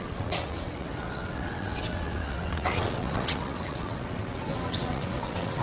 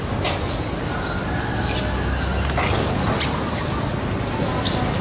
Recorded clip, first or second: second